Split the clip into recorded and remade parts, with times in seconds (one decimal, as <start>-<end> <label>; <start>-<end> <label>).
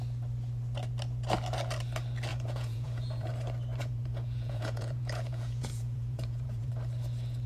0.0-2.3 recorded; 2.3-3.3 remade; 3.3-3.8 recorded; 3.8-6.7 remade; 6.7-7.5 recorded